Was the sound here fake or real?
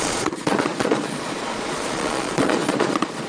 fake